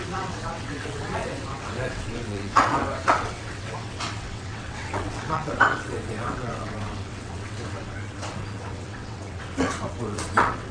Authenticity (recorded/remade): remade